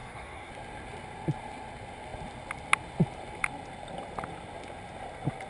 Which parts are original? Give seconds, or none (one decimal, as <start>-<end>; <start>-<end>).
0.5-5.5